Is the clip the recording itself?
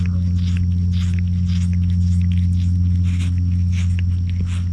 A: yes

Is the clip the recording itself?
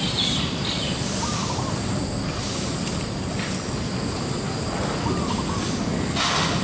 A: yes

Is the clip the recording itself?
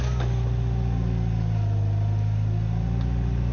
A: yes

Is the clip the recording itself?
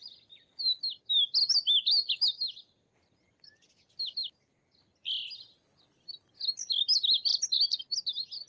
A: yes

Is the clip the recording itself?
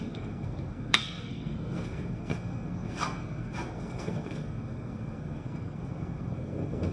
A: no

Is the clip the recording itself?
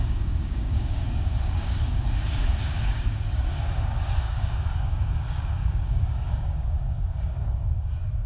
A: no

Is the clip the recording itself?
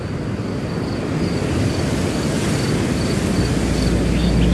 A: yes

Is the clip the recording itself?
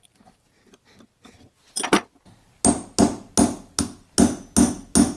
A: yes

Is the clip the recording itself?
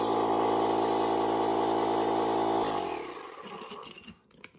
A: yes